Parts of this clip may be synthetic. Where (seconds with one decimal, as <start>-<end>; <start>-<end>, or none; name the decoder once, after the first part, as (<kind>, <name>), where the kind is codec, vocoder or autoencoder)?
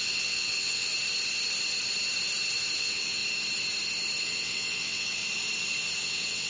0.0-0.9 (vocoder, WaveNeXt); 2.8-3.2; 4.2-5.2; 6.0-6.5